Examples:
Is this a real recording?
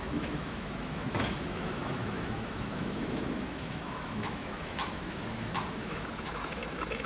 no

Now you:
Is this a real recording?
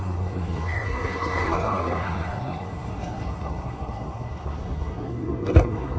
no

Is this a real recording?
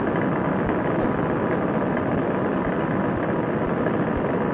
yes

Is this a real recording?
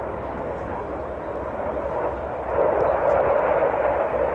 yes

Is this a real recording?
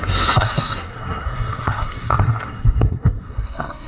no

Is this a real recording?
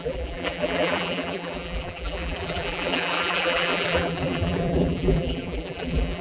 no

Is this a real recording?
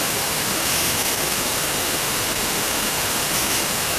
no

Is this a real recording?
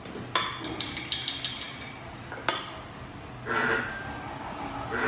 yes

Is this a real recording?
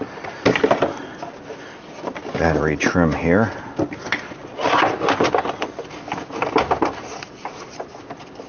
yes